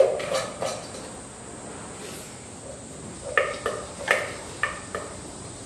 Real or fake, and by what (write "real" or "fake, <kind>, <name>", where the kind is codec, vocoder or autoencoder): real